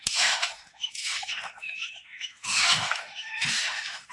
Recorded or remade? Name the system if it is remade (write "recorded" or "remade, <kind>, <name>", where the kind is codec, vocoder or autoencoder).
remade, autoencoder, DAC-VAE